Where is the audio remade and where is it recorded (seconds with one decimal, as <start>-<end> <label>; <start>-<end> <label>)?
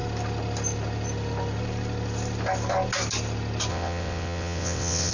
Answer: 0.0-3.7 recorded; 3.7-5.1 remade